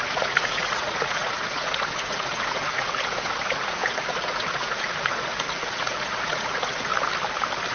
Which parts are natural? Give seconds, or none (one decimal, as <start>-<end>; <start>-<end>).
6.9-7.7